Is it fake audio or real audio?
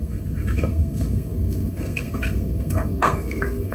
fake